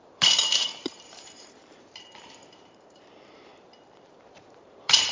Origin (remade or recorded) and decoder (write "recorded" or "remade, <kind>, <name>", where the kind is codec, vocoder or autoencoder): remade, vocoder, BigVGAN v2